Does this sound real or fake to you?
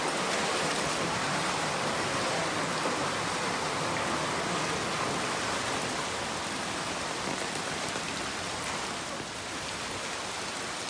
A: real